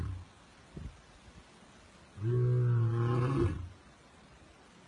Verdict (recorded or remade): recorded